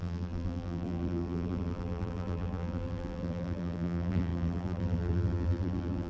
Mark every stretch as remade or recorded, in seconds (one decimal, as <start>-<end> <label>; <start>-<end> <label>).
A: 0.0-6.1 remade